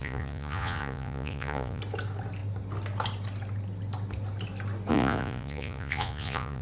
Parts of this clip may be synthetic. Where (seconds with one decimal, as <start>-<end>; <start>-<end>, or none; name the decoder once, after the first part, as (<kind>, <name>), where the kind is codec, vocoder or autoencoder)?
0.0-1.8 (vocoder, Vocos); 4.9-6.6